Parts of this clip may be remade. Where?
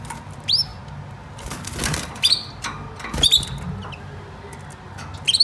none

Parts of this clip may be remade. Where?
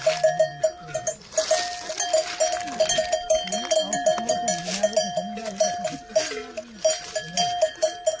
none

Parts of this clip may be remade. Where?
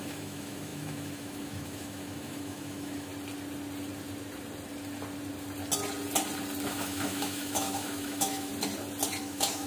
0.0-3.1; 6.7-8.5; 9.2-9.7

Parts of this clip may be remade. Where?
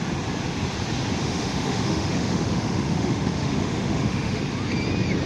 1.2-4.4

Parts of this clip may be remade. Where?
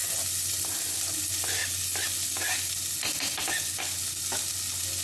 none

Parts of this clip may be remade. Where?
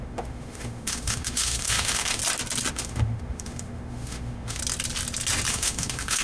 0.0-2.2; 2.7-4.6; 5.5-6.2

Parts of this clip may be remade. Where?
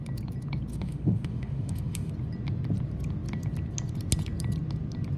0.7-2.1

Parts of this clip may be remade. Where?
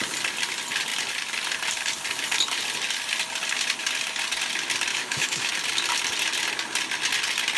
4.9-5.5